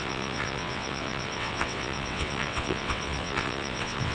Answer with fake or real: fake